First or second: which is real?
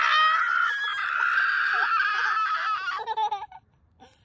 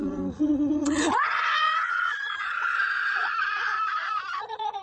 first